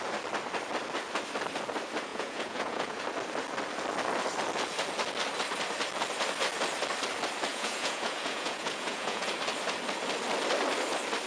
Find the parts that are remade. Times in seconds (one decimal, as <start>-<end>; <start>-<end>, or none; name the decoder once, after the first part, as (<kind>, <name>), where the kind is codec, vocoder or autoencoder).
2.1-3.0 (vocoder, Vocos); 7.5-9.3